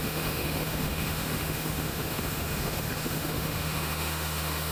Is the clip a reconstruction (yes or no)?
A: yes